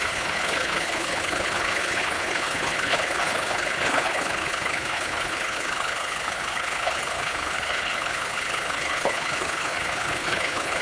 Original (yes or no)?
no